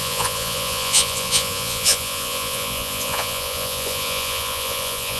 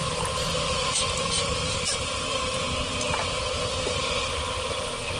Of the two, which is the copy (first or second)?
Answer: first